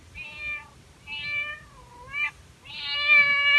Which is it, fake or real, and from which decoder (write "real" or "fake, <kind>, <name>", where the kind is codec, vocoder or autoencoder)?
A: real